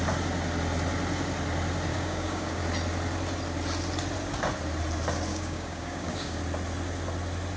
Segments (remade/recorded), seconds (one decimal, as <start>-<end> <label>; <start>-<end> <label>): 0.0-1.9 recorded; 1.9-2.6 remade; 2.6-5.3 recorded; 5.3-6.4 remade; 6.4-7.6 recorded